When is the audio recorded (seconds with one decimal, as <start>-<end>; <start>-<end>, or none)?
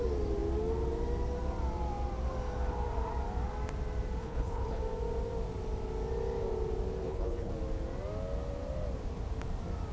0.0-4.2; 4.8-7.0; 7.5-9.9